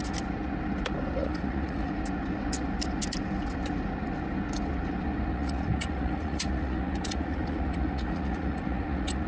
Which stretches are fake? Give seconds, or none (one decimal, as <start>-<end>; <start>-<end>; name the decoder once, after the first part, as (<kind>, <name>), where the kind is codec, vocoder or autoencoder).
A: 1.2-1.9 (vocoder, Vocos); 5.3-9.3